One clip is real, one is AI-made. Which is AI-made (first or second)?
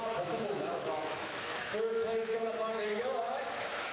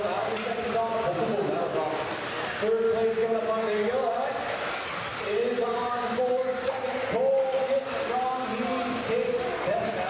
first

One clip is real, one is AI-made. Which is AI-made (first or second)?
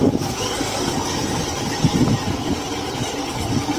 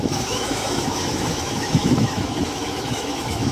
second